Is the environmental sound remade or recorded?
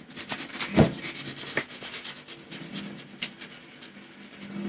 recorded